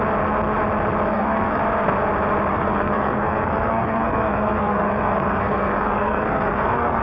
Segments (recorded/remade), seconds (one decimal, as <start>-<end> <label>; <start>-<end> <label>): 0.0-1.1 recorded; 1.1-1.6 remade; 1.6-2.5 recorded; 2.5-7.0 remade